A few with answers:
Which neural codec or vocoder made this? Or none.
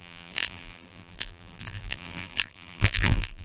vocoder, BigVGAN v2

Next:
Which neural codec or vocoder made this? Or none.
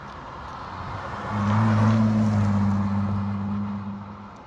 none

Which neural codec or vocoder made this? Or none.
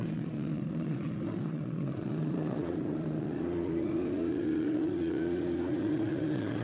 vocoder, Vocos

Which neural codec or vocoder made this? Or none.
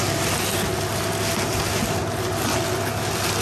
none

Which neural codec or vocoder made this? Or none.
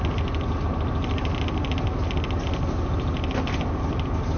none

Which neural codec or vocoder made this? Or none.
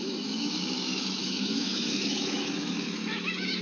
autoencoder, DAC-VAE